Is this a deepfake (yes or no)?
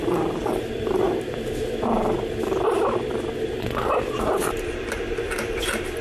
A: no